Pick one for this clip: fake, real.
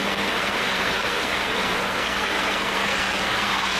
fake